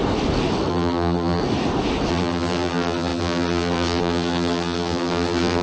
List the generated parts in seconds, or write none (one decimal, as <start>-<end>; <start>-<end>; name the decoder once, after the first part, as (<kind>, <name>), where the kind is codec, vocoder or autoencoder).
0.7-1.4 (vocoder, BigVGAN v2); 2.1-5.6